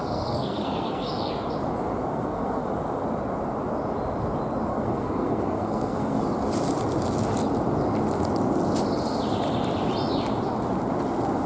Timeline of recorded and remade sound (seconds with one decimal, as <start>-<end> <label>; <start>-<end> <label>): 0.0-1.3 remade; 1.3-2.0 recorded; 2.0-2.7 remade; 2.7-4.7 recorded; 4.7-6.2 remade; 6.2-11.5 recorded